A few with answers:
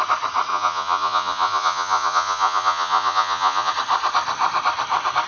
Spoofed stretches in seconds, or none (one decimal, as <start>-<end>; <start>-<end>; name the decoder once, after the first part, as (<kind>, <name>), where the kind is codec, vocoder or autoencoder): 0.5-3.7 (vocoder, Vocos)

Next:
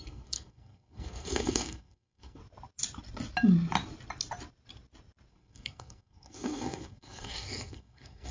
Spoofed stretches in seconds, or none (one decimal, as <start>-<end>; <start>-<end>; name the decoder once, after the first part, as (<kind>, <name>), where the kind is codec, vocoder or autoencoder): 0.0-2.4 (codec, SNAC); 5.3-8.3

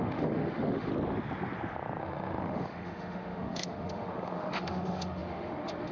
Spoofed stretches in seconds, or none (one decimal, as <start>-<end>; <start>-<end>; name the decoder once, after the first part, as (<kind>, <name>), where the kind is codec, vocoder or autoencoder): 0.0-0.9 (autoencoder, DAC-VAE); 2.0-5.9

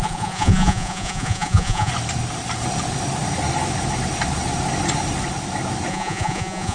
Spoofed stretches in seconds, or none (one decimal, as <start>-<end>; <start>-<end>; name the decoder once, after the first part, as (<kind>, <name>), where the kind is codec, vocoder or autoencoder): 0.0-1.9 (vocoder, Vocos); 5.9-6.7

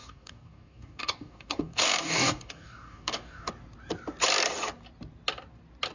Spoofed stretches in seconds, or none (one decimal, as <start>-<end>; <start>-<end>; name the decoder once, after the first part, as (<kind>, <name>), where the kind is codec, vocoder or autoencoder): 0.0-3.5 (codec, DAC)

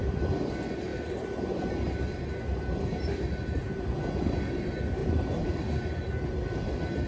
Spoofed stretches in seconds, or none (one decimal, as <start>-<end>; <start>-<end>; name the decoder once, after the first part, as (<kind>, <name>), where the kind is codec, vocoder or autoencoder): 5.0-5.6 (vocoder, BigVGAN v2)

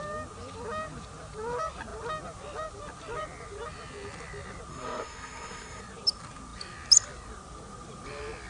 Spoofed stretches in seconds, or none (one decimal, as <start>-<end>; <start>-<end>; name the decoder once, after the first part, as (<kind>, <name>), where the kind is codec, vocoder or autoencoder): 4.7-5.8 (codec, SNAC)